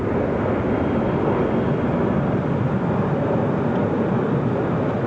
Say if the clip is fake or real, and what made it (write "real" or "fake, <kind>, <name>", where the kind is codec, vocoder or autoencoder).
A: real